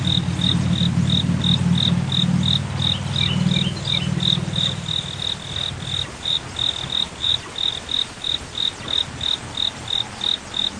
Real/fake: real